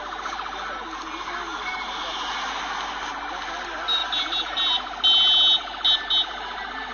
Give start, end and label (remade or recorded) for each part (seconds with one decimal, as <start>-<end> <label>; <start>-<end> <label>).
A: 0.0-6.9 recorded